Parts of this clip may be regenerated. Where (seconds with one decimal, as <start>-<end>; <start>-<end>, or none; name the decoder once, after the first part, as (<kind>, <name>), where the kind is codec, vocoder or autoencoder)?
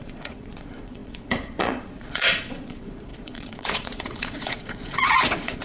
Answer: 0.0-5.6 (vocoder, Vocos)